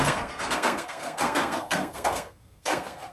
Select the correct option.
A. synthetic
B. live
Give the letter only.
A